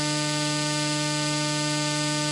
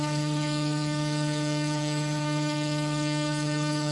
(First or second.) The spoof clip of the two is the second